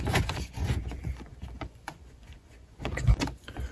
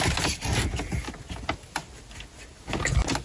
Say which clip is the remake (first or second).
first